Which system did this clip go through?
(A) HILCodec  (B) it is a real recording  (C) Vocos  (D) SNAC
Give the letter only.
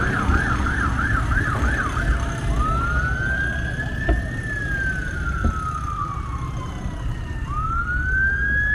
B